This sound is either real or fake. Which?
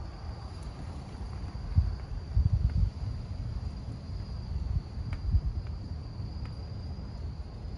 real